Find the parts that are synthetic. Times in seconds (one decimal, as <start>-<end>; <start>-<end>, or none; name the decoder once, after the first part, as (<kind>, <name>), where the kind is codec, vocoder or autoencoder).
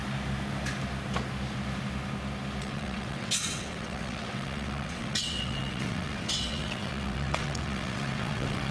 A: 2.6-8.7 (vocoder, WaveNeXt)